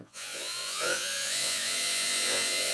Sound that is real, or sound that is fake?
fake